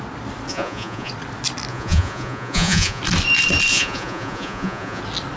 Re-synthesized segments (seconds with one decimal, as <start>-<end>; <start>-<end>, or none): 0.5-1.1; 1.7-3.0; 3.7-5.0